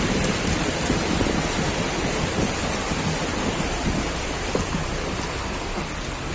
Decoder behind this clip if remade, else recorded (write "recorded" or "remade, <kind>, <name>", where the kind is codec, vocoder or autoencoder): recorded